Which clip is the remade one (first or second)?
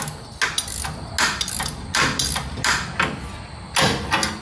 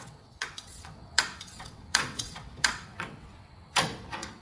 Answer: second